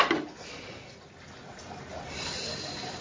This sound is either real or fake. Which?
real